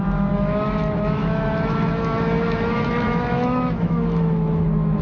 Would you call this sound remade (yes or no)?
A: yes